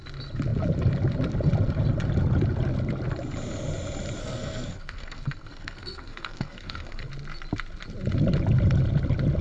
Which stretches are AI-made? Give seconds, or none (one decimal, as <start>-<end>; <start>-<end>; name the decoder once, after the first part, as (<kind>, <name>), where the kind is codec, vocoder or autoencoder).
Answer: 4.2-7.1 (codec, SNAC)